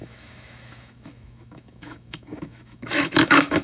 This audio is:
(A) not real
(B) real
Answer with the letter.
A